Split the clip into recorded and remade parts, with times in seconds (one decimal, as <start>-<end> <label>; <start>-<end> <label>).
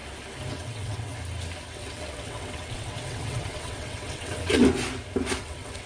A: 0.0-0.5 recorded; 0.5-1.1 remade; 1.1-1.7 recorded; 1.7-4.6 remade; 4.6-5.4 recorded; 5.4-5.9 remade